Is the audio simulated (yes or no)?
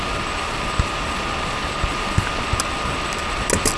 no